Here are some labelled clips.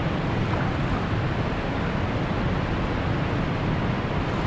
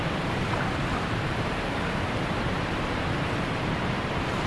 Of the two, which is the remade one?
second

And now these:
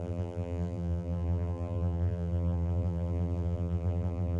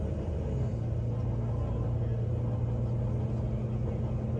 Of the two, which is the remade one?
first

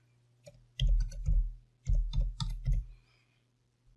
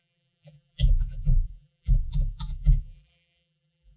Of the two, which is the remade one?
second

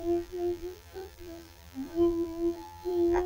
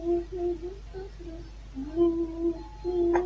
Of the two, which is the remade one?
first